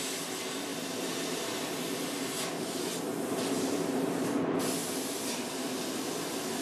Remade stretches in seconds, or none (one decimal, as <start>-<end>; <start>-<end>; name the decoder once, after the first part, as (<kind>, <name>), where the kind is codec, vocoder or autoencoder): none